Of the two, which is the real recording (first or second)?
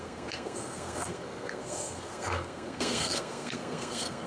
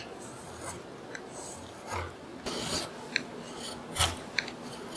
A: second